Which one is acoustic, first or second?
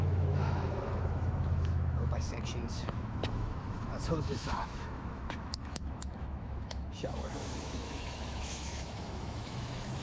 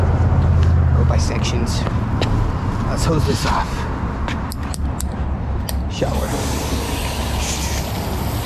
second